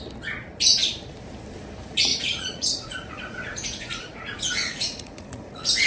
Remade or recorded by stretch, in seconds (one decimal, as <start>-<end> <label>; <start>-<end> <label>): 0.0-2.1 recorded; 2.1-5.9 remade